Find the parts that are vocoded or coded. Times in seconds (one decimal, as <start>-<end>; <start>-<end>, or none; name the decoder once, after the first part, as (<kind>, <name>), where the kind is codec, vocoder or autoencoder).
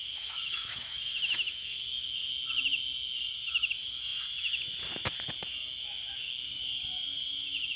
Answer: 0.0-2.3 (autoencoder, DAC-VAE); 5.8-6.6